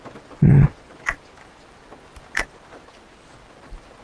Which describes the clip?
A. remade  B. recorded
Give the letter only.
B